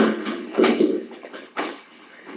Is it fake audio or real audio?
fake